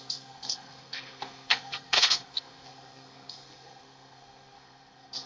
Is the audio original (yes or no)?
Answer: no